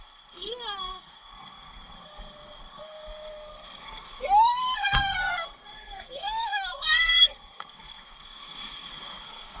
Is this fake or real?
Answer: fake